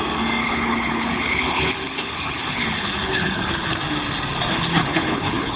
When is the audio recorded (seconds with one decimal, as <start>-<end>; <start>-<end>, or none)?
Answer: 0.0-0.4; 3.8-4.5